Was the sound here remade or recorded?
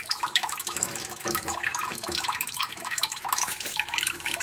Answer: remade